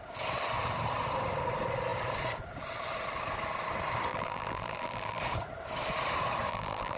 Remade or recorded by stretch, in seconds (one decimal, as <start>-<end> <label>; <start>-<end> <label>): 0.0-4.1 recorded; 4.1-5.2 remade; 5.2-6.5 recorded; 6.5-7.0 remade